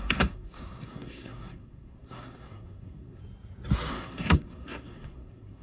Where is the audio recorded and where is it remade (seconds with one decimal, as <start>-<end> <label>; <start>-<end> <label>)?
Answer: 0.0-3.2 remade; 3.2-3.9 recorded; 3.9-5.6 remade